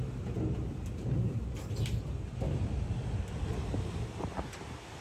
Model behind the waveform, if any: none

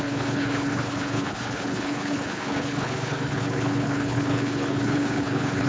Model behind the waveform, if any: codec, HILCodec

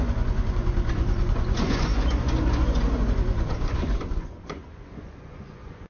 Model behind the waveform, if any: vocoder, Vocos